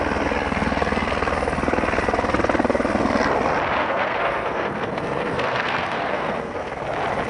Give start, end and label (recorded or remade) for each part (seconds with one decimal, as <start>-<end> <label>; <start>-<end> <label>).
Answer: 0.0-3.8 recorded; 3.8-6.7 remade; 6.7-7.3 recorded